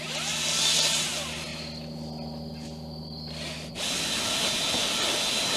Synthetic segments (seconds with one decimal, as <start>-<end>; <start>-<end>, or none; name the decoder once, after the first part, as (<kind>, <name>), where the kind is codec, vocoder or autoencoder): none